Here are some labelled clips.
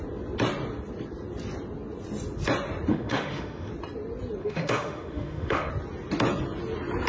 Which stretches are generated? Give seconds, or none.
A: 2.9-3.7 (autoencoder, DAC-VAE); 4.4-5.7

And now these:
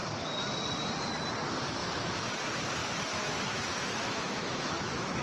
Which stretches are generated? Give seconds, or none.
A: 1.8-2.3 (autoencoder, DAC-VAE); 2.8-5.2

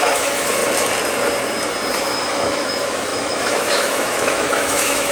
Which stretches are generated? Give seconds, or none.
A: 0.0-0.6 (autoencoder, DAC-VAE); 1.9-5.1